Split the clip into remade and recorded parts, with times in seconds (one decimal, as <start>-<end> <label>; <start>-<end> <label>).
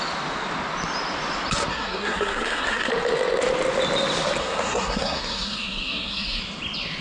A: 0.0-1.7 recorded; 1.7-2.9 remade; 2.9-4.4 recorded; 4.4-6.4 remade; 6.4-7.0 recorded